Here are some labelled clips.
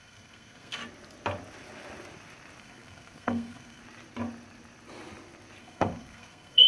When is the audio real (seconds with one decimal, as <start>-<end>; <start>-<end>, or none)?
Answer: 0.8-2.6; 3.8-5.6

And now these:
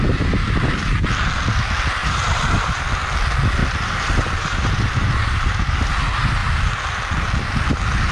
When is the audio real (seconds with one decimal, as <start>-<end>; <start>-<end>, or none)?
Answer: 0.0-2.0; 2.8-3.6; 5.9-8.1

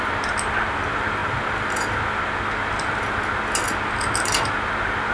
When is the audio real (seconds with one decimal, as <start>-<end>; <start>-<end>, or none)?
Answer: 0.0-5.1

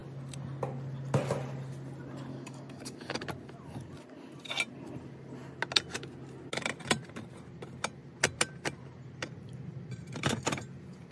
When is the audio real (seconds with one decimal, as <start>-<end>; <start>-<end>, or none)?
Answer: 0.0-2.3; 3.2-11.1